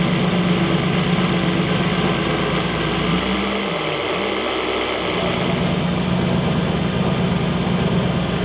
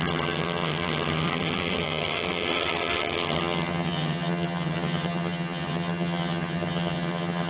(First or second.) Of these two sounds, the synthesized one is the second